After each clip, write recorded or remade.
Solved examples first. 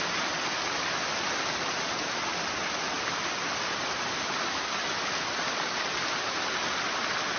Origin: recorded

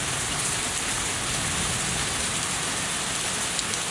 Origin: recorded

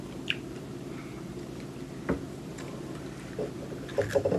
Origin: recorded